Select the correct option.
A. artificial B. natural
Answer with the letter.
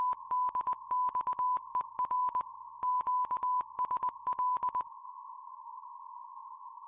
B